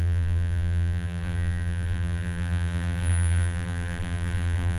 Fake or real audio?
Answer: fake